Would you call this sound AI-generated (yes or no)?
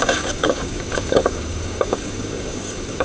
yes